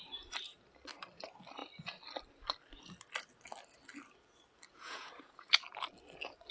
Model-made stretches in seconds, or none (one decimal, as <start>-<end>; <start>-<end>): 4.7-5.6